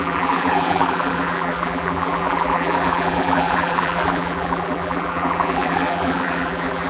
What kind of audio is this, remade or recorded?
remade